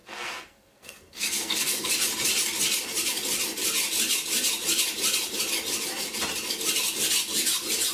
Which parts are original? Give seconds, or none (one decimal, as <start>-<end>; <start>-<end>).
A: 1.9-7.9